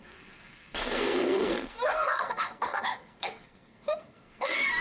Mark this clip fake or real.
fake